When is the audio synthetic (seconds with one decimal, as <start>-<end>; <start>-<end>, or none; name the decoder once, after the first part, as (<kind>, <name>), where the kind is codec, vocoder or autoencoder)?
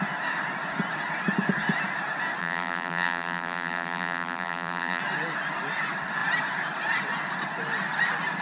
2.4-5.0 (vocoder, BigVGAN v2)